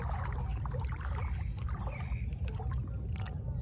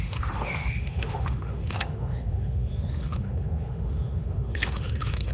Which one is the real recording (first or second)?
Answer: first